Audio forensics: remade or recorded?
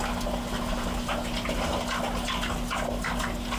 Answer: recorded